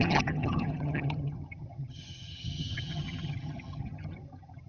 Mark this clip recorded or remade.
remade